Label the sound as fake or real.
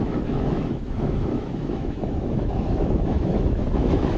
fake